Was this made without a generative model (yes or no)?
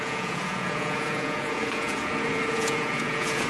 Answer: no